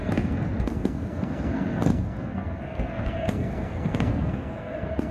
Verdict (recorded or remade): remade